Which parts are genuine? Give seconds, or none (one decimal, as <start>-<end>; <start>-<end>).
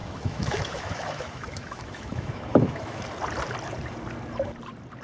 3.0-5.0